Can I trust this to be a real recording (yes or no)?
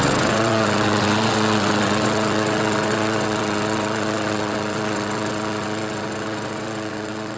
no